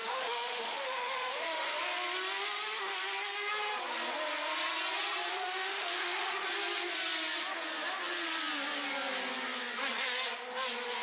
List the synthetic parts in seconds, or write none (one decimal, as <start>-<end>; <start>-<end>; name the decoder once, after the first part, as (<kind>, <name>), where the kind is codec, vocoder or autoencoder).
0.0-1.8 (autoencoder, DAC-VAE); 5.3-6.3